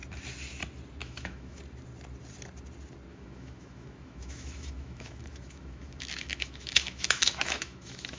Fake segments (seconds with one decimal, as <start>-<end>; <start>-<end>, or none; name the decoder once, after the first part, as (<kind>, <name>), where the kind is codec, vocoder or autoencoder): 1.0-1.6 (autoencoder, DAC-VAE); 3.1-8.2